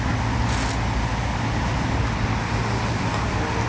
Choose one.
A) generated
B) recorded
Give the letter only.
B